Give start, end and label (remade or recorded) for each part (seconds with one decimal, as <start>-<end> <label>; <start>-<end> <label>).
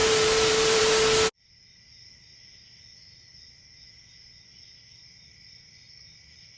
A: 0.0-0.8 remade; 0.8-6.6 recorded